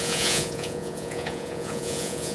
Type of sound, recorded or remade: remade